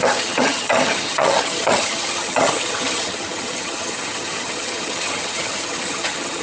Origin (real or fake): fake